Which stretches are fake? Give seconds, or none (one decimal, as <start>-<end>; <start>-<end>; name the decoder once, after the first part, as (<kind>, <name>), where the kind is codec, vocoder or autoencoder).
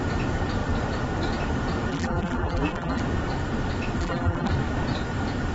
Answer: 1.9-3.0 (vocoder, BigVGAN v2); 4.0-4.5